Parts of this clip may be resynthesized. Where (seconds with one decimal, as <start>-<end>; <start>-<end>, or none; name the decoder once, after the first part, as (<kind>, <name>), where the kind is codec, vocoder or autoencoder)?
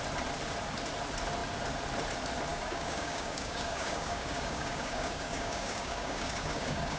2.5-7.0 (codec, DAC)